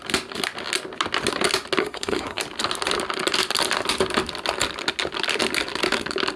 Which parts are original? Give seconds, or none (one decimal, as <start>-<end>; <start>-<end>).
0.0-1.8; 2.4-6.4